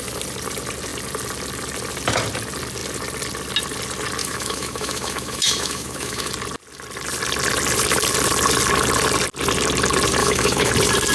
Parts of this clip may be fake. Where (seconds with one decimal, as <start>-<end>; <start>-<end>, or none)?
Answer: 4.2-6.3; 10.2-10.7